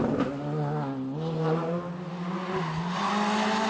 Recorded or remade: recorded